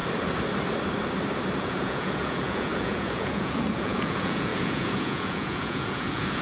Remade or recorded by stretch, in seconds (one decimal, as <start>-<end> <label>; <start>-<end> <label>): 0.0-1.6 recorded; 1.6-6.4 remade